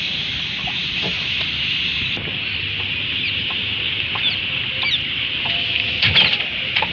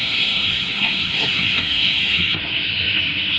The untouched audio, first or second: first